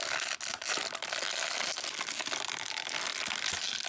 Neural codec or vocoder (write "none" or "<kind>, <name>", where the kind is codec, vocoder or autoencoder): none